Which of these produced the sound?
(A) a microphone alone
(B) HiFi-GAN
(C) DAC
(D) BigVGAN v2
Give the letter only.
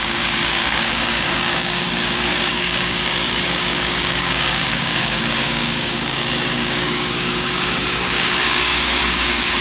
C